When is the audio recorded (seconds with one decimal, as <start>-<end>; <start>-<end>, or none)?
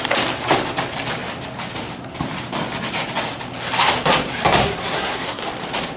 0.0-4.6; 5.4-6.0